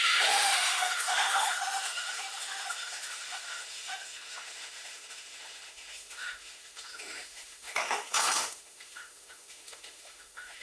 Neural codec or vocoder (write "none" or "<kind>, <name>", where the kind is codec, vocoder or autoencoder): autoencoder, DAC-VAE